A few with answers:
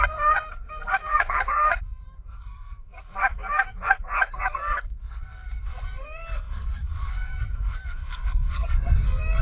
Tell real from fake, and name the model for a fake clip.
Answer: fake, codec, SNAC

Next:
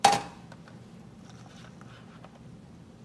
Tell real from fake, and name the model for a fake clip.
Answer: real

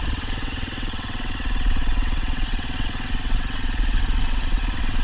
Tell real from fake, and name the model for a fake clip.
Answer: fake, vocoder, WaveNeXt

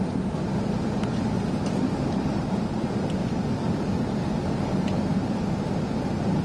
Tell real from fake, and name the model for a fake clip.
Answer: real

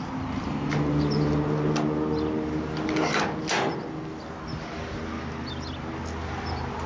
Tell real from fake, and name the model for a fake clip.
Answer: real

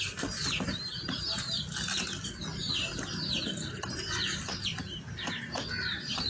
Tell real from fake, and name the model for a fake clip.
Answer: real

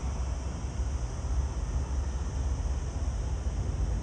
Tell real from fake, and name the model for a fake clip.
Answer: real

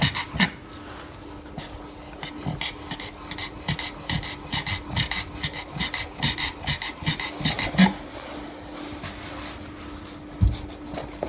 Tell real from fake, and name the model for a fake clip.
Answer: real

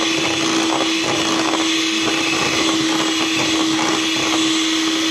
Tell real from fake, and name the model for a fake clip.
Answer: real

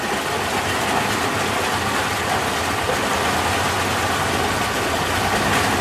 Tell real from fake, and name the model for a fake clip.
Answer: real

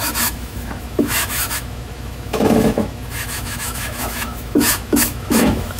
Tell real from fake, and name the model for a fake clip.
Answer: fake, autoencoder, DAC-VAE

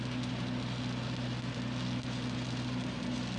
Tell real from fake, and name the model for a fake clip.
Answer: real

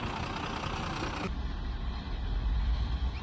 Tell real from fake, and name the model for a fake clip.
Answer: real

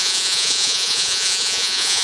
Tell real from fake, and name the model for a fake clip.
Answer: fake, vocoder, Vocos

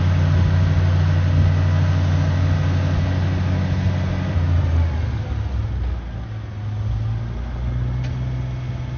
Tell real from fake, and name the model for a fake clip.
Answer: real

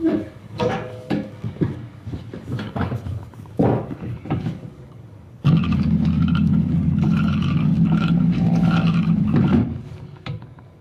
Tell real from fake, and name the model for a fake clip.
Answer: fake, codec, DAC